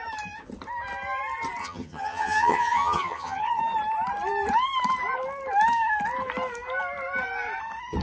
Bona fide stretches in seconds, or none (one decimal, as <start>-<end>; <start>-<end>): 0.0-1.6; 3.6-8.0